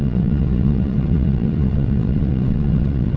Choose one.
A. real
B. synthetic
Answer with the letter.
B